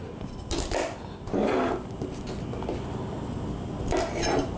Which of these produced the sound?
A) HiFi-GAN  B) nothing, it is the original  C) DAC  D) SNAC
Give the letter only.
B